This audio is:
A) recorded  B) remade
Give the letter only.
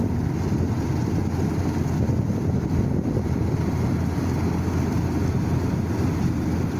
A